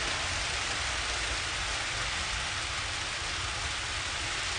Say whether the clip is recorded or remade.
recorded